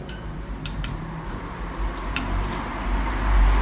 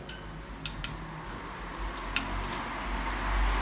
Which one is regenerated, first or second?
first